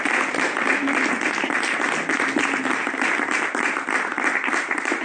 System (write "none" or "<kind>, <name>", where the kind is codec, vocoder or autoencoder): none